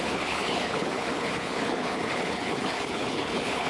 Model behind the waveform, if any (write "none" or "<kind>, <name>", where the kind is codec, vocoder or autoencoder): codec, HILCodec